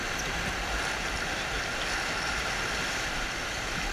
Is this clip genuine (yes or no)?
yes